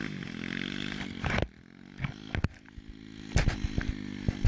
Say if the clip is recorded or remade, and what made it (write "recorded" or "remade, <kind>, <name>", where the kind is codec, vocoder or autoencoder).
recorded